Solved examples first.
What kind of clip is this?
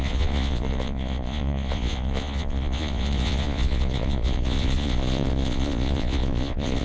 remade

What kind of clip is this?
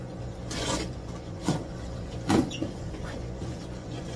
remade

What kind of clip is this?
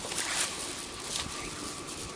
recorded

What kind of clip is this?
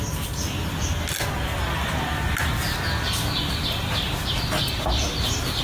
recorded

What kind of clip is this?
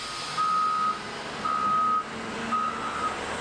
recorded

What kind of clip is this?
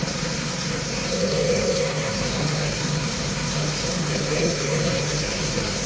remade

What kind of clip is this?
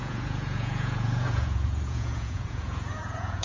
remade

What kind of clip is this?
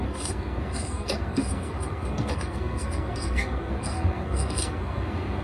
remade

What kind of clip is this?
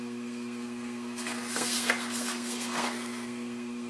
remade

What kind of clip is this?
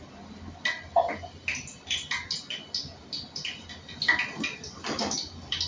recorded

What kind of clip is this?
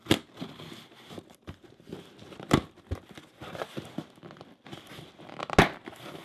recorded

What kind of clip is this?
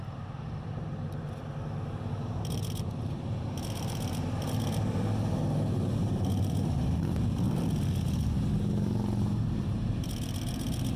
recorded